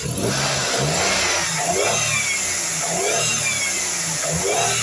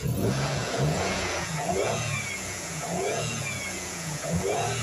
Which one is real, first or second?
first